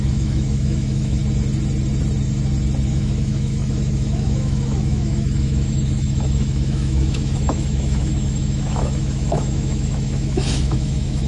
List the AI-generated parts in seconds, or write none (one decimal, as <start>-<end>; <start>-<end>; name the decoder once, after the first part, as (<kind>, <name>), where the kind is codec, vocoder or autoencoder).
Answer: 0.0-1.2 (autoencoder, DAC-VAE); 2.9-11.3